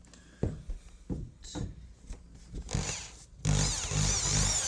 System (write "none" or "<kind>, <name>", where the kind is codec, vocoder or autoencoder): none